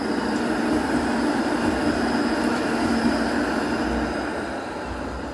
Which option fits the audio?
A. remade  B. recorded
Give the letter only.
B